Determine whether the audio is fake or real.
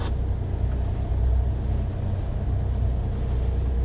real